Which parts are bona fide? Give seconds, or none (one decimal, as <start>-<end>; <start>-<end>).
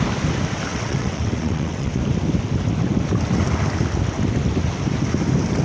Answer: 0.0-0.7; 2.0-5.6